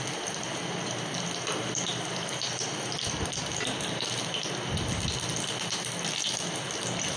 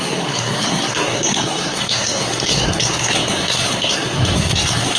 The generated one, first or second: second